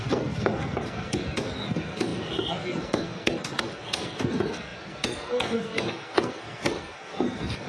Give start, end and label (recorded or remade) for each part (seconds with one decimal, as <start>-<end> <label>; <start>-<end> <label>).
0.0-7.7 remade